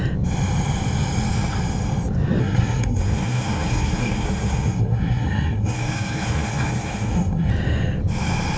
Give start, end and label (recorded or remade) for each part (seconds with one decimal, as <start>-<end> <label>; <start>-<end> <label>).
0.0-2.4 recorded; 2.4-7.5 remade; 7.5-8.6 recorded